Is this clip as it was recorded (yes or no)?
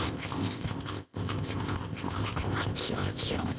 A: no